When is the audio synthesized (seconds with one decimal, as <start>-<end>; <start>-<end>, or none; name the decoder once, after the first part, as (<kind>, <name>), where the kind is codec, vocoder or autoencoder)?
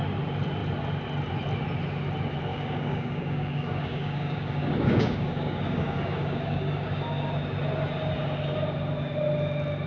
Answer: 2.5-7.3 (codec, DAC)